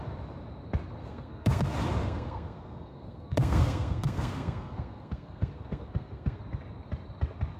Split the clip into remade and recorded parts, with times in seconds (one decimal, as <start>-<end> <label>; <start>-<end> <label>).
0.0-1.0 recorded; 1.0-1.6 remade; 1.6-2.0 recorded; 2.0-6.4 remade; 6.4-7.6 recorded